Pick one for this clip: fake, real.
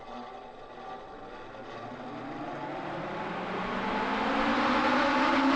real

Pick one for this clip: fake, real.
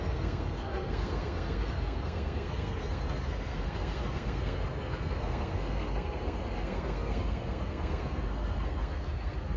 fake